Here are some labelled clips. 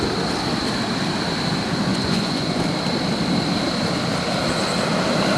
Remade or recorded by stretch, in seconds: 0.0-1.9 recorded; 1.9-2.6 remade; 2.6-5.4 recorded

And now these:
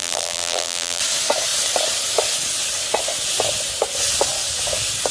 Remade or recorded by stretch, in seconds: 0.0-1.0 remade; 1.0-5.1 recorded

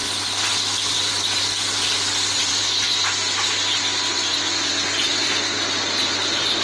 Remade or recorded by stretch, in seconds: 0.0-3.8 recorded; 3.8-5.1 remade; 5.1-6.6 recorded

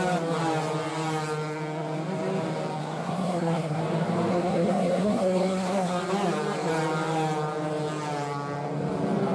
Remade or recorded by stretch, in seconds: 0.0-2.8 recorded; 2.8-3.8 remade; 3.8-4.3 recorded; 4.3-6.0 remade; 6.0-9.3 recorded

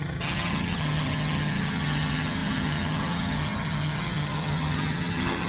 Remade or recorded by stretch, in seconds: 0.0-5.5 remade

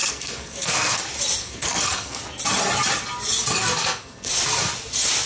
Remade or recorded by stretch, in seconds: 0.0-1.0 remade; 1.0-1.4 recorded; 1.4-2.2 remade; 2.2-3.6 recorded; 3.6-4.3 remade; 4.3-5.3 recorded

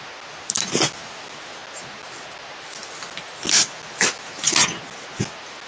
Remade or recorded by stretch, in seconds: 0.0-5.7 recorded

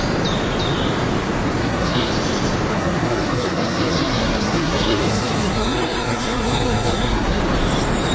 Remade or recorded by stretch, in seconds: 0.0-1.6 recorded; 1.6-2.1 remade; 2.1-2.7 recorded; 2.7-7.4 remade; 7.4-8.1 recorded